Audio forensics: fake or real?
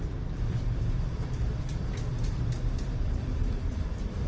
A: fake